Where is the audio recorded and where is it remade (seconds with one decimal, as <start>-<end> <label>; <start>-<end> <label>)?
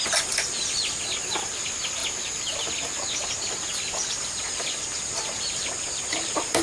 0.0-6.6 recorded